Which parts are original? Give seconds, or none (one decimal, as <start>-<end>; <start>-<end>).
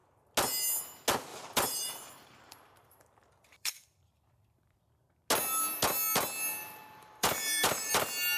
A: 0.0-1.3; 4.8-6.6; 7.9-8.4